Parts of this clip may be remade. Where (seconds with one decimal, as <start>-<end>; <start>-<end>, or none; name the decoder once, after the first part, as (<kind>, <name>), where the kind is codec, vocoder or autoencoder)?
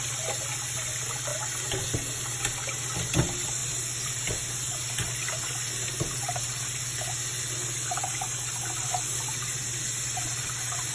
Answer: none